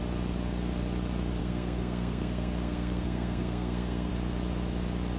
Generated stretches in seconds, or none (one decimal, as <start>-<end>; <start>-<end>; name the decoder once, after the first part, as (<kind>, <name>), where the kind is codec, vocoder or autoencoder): 1.4-4.1 (codec, SNAC)